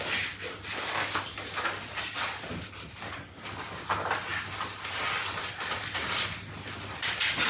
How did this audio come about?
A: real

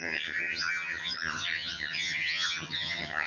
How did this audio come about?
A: fake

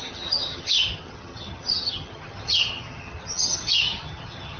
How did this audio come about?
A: fake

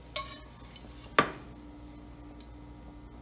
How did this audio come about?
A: real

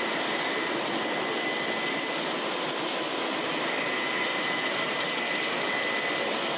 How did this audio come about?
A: real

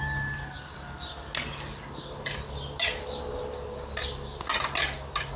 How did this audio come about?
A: real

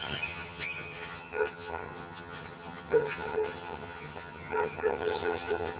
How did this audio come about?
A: fake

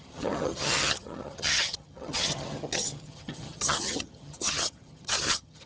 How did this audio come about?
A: fake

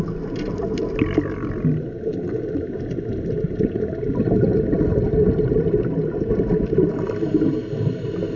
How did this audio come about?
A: real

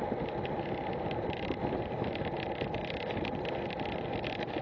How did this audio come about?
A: real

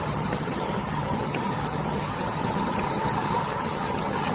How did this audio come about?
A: fake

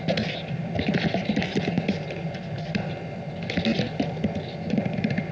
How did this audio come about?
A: real